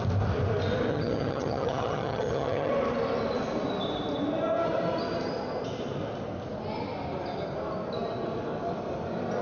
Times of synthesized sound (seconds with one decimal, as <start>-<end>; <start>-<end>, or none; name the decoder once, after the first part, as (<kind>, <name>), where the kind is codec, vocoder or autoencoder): 0.9-2.7 (vocoder, HiFi-GAN)